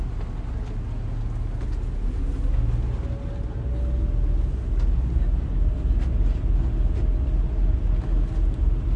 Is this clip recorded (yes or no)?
yes